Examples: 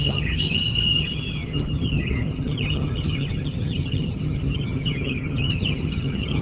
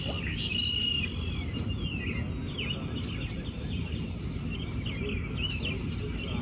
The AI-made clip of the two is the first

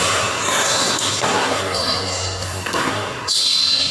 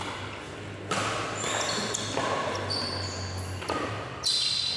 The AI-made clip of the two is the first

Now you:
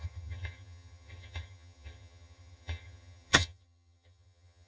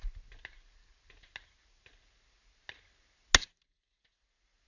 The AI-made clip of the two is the first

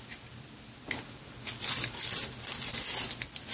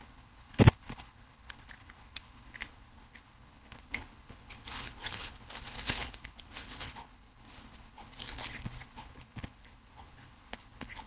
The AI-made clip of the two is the second